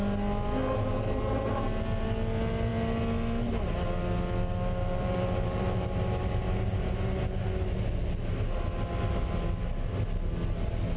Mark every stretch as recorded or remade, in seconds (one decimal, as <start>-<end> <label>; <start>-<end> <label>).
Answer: 0.0-4.8 recorded; 4.8-6.0 remade; 6.0-11.0 recorded